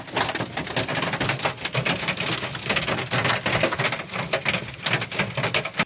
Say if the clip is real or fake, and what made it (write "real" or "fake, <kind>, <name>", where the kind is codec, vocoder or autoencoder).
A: real